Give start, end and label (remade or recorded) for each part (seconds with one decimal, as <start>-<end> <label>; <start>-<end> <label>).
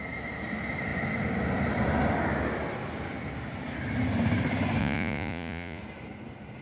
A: 0.0-4.8 recorded; 4.8-5.8 remade; 5.8-6.6 recorded